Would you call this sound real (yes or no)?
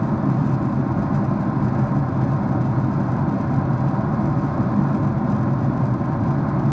yes